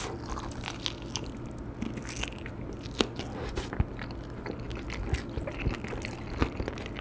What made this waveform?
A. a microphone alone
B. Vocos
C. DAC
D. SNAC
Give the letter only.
A